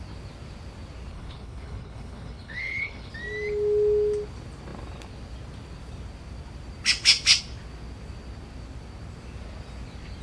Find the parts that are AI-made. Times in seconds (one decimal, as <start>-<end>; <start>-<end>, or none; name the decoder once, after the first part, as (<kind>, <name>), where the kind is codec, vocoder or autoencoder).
1.1-3.1 (codec, HILCodec)

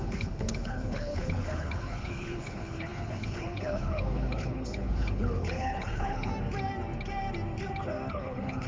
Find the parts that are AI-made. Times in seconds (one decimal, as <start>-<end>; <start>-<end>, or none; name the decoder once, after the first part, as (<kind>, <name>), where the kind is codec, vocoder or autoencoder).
0.0-6.3 (codec, HILCodec); 8.1-8.7

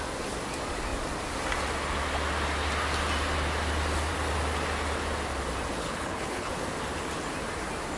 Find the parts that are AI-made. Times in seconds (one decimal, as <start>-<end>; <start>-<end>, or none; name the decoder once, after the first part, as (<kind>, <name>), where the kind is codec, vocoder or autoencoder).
5.8-6.5 (codec, HILCodec)

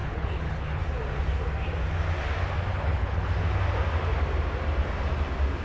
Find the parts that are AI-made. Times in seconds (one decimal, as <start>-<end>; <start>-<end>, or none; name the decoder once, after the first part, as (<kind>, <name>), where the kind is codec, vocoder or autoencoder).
0.0-0.8 (codec, HILCodec); 2.7-3.3

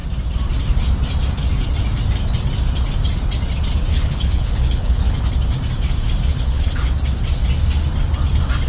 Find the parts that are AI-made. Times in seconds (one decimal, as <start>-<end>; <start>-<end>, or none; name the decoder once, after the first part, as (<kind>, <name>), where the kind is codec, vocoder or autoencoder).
3.9-5.3 (codec, HILCodec); 6.3-6.9